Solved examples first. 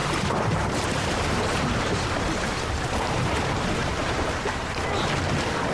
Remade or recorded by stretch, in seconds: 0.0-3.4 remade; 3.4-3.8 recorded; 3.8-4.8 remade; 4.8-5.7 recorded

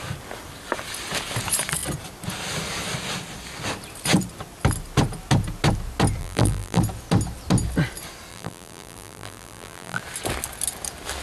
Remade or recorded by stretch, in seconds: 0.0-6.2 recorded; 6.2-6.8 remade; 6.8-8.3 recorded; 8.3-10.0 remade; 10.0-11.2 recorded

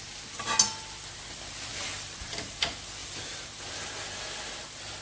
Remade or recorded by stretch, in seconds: 0.0-1.7 recorded; 1.7-2.6 remade; 2.6-3.0 recorded; 3.0-4.1 remade; 4.1-5.0 recorded

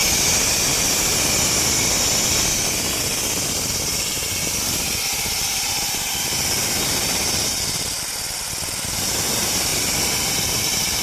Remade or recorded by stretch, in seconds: 0.0-4.1 recorded; 4.1-8.1 remade; 8.1-9.0 recorded; 9.0-11.0 remade

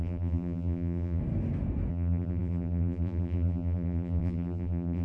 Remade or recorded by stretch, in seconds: 0.0-1.2 remade; 1.2-1.9 recorded; 1.9-5.0 remade

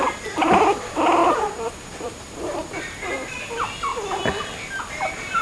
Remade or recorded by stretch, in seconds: 0.0-1.2 recorded; 1.2-3.1 remade; 3.1-5.4 recorded

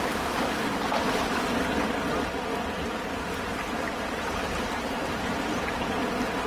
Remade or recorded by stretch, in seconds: 0.0-2.5 recorded; 2.5-5.9 remade; 5.9-6.5 recorded

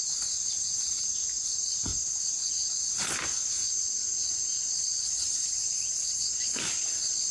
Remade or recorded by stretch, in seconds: 0.0-1.9 recorded; 1.9-2.5 remade; 2.5-4.5 recorded; 4.5-6.4 remade; 6.4-7.3 recorded